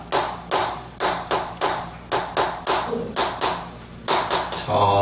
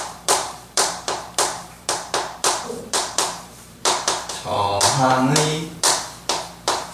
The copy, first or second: second